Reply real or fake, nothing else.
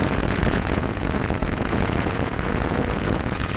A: fake